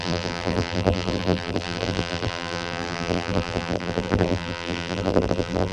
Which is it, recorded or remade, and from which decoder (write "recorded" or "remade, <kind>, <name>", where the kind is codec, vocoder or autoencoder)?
remade, vocoder, BigVGAN v2